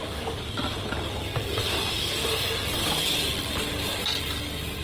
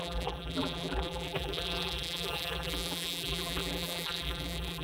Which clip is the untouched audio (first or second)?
first